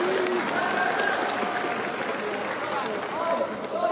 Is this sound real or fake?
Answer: real